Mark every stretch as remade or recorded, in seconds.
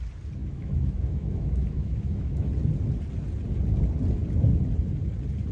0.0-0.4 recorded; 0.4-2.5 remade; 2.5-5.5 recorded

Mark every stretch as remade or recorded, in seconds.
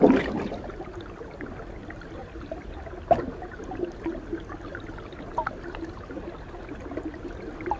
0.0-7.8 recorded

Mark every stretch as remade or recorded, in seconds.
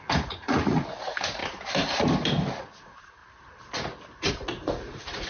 0.0-1.4 remade; 1.4-2.8 recorded; 2.8-3.2 remade; 3.2-4.3 recorded; 4.3-5.3 remade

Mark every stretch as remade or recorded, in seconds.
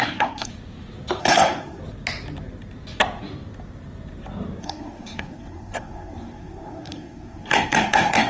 0.0-0.5 remade; 0.5-1.2 recorded; 1.2-1.8 remade; 1.8-4.6 recorded; 4.6-8.3 remade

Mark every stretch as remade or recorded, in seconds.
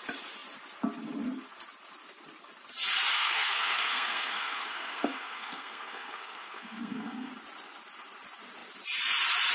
0.0-3.1 recorded; 3.1-7.3 remade; 7.3-9.5 recorded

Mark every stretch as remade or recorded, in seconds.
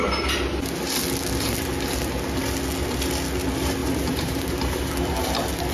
0.0-3.8 recorded; 3.8-4.9 remade; 4.9-5.7 recorded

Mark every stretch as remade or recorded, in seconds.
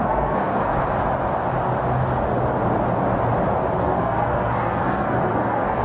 0.0-0.7 remade; 0.7-3.8 recorded; 3.8-5.8 remade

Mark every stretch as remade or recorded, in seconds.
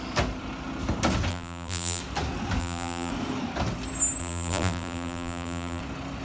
0.0-1.3 recorded; 1.3-2.0 remade; 2.0-2.6 recorded; 2.6-3.1 remade; 3.1-4.2 recorded; 4.2-5.8 remade; 5.8-6.2 recorded